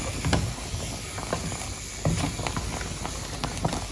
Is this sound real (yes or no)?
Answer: yes